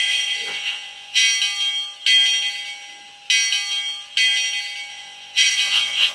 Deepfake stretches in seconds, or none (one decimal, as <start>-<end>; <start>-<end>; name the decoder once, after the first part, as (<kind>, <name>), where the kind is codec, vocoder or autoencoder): 0.0-1.2 (vocoder, Vocos); 4.9-6.1